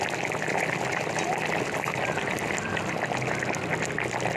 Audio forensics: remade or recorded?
recorded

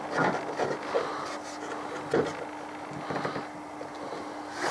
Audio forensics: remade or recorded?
recorded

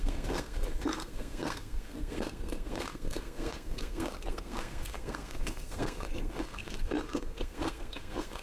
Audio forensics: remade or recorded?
remade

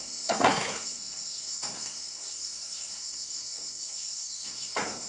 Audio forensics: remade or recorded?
remade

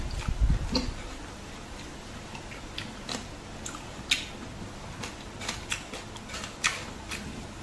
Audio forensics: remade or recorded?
recorded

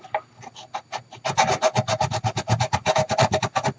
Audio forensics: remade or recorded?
recorded